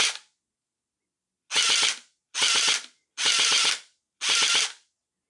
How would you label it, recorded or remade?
recorded